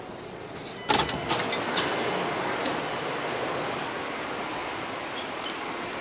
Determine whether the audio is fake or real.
real